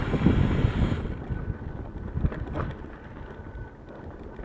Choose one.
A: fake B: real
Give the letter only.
B